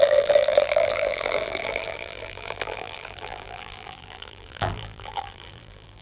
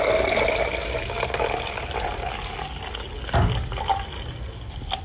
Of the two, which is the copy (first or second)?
first